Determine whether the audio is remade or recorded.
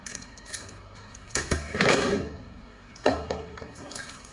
remade